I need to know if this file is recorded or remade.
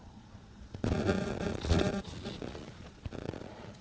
remade